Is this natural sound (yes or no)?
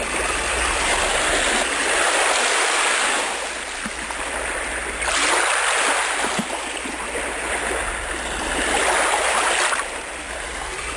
yes